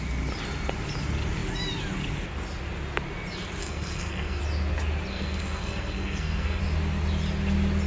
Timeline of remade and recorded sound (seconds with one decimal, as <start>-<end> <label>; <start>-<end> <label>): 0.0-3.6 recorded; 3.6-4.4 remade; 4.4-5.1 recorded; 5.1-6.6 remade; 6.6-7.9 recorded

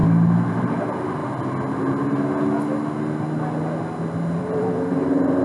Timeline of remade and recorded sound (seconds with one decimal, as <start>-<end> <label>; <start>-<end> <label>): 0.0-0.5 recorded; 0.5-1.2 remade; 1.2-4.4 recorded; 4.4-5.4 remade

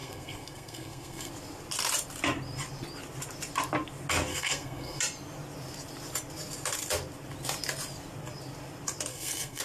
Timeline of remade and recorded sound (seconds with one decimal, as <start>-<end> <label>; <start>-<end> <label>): 0.0-1.3 remade; 1.3-4.3 recorded; 4.3-5.0 remade; 5.0-9.1 recorded; 9.1-9.6 remade

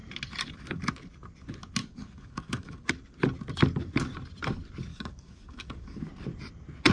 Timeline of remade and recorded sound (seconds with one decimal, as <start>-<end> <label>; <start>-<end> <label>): 0.0-1.8 recorded; 1.8-2.9 remade; 2.9-4.9 recorded; 4.9-6.1 remade; 6.1-6.9 recorded

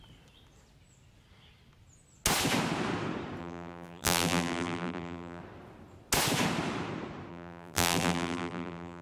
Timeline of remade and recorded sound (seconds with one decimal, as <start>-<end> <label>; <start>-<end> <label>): 0.0-3.4 recorded; 3.4-5.4 remade; 5.4-7.3 recorded; 7.3-9.0 remade

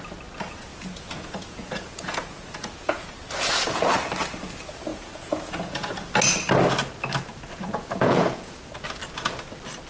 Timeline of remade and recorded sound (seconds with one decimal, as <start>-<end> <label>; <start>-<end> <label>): 0.0-0.7 recorded; 0.7-3.0 remade; 3.0-4.9 recorded; 4.9-5.9 remade; 5.9-7.5 recorded; 7.5-8.7 remade; 8.7-9.9 recorded

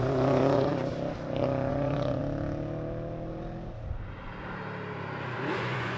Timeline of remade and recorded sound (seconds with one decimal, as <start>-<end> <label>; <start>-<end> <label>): 0.0-0.7 remade; 0.7-1.7 recorded; 1.7-2.2 remade; 2.2-5.5 recorded; 5.5-6.0 remade

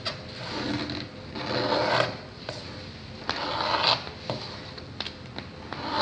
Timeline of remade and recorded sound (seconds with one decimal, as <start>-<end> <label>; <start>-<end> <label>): 0.0-6.0 recorded